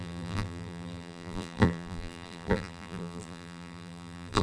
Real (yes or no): no